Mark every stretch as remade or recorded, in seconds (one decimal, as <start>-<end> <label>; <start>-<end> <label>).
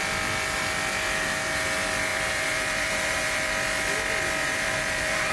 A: 0.0-2.1 recorded; 2.1-3.5 remade; 3.5-4.4 recorded; 4.4-5.3 remade